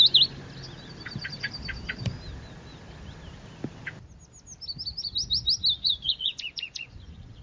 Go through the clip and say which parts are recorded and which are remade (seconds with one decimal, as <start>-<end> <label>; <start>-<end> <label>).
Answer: 0.0-5.8 recorded; 5.8-7.4 remade